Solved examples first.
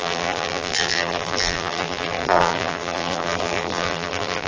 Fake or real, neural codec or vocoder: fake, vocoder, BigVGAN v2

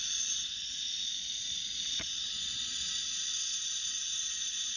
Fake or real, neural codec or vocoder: fake, vocoder, Vocos